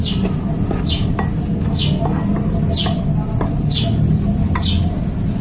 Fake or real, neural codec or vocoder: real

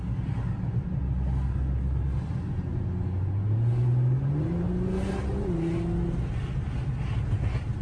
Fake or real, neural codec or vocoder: real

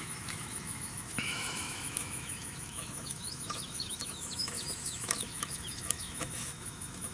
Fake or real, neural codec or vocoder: fake, autoencoder, DAC-VAE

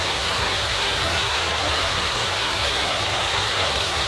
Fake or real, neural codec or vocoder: fake, codec, SNAC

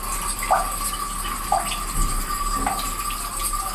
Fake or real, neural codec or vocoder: real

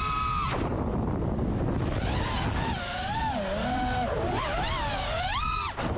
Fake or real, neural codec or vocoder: real